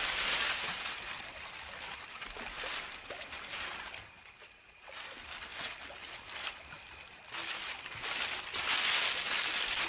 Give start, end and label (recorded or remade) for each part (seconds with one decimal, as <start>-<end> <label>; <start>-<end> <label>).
0.0-9.9 recorded